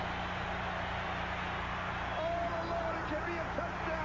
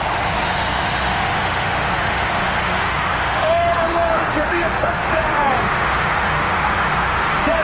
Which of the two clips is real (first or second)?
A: first